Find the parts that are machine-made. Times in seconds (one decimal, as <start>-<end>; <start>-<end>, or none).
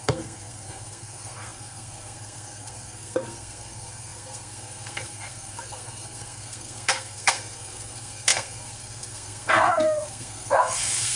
0.0-11.2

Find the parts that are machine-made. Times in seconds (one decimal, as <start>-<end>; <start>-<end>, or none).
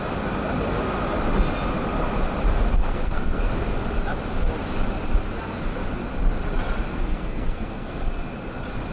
2.8-3.5; 6.9-8.1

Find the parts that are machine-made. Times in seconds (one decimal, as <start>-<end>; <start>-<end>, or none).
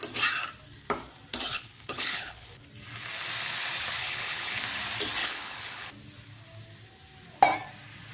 1.5-2.7; 4.0-4.6; 5.2-5.9